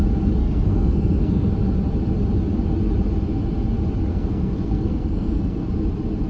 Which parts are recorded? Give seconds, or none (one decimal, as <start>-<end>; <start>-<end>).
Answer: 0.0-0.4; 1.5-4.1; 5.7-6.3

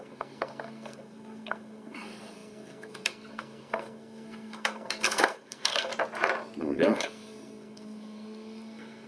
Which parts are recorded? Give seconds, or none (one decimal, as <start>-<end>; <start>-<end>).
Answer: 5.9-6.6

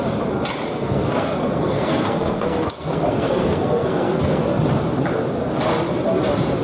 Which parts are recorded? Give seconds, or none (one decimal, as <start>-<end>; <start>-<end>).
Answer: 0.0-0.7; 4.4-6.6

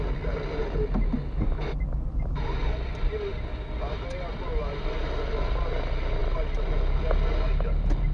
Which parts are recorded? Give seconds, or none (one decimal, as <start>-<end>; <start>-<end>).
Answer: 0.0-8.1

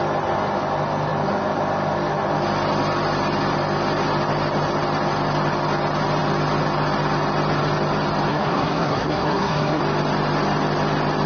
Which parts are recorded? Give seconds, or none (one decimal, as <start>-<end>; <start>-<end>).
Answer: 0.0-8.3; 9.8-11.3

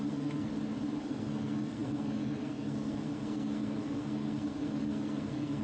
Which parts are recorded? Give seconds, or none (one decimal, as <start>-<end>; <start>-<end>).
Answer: 0.5-1.0